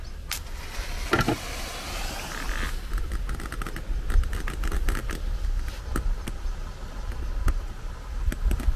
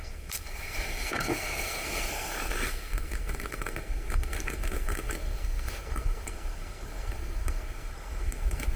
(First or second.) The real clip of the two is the first